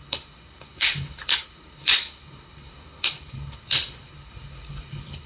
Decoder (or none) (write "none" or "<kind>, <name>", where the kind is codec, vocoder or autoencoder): codec, HILCodec